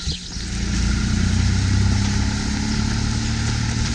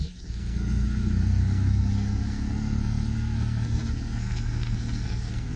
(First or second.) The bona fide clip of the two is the first